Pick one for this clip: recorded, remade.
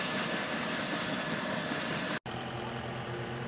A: recorded